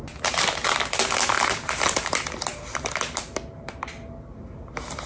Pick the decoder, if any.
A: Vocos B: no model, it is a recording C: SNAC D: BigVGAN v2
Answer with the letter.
B